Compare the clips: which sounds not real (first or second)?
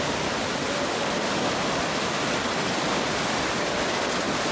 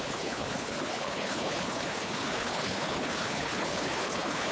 second